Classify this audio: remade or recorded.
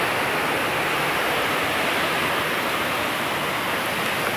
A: recorded